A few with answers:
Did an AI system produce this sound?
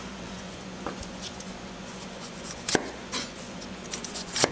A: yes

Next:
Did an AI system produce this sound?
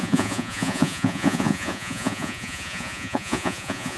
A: yes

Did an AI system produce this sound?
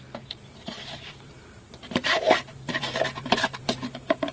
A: yes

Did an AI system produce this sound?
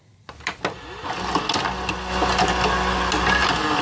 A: no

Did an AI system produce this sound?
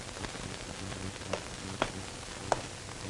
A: no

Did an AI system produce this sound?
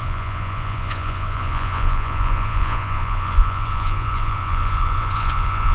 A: yes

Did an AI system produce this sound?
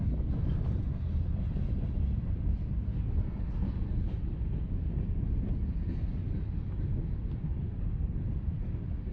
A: no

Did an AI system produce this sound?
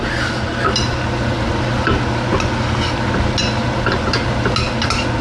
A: no